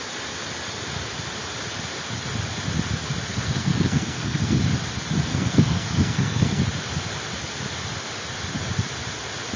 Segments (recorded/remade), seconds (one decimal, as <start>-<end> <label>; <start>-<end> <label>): 0.0-3.3 recorded; 3.3-4.6 remade; 4.6-5.3 recorded; 5.3-6.6 remade; 6.6-9.6 recorded